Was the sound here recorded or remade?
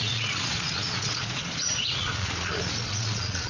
remade